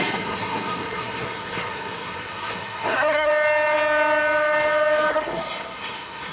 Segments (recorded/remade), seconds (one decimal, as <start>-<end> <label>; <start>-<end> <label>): 0.0-3.3 remade; 3.3-5.1 recorded; 5.1-6.3 remade